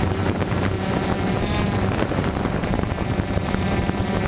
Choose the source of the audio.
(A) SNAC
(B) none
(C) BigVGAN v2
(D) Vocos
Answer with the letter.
C